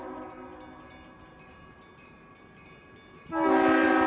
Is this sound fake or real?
real